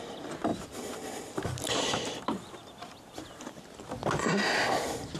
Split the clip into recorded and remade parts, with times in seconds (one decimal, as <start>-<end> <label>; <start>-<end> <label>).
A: 0.0-0.5 recorded; 0.5-3.6 remade; 3.6-5.2 recorded